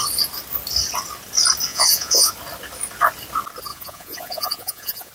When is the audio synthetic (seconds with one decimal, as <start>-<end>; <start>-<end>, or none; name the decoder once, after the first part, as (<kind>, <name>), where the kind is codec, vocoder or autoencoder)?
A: 1.7-2.3 (vocoder, Vocos); 3.7-5.1